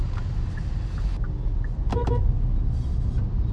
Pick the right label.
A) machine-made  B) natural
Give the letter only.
B